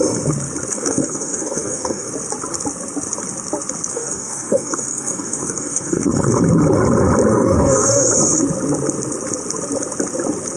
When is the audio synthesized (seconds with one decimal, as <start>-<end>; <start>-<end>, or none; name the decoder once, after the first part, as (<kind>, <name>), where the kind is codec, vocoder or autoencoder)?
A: 0.7-2.1 (codec, DAC); 3.9-6.4; 7.3-8.1